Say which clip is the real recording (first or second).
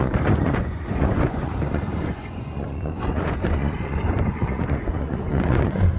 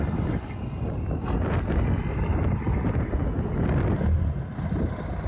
second